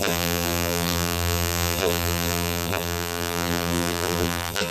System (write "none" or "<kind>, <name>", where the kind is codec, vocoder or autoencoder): vocoder, BigVGAN v2